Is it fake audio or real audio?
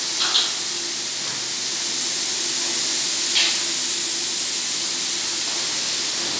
real